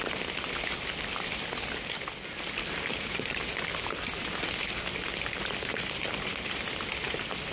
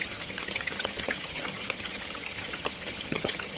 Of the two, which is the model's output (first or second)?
second